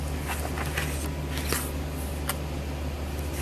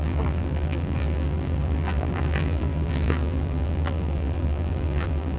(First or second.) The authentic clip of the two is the first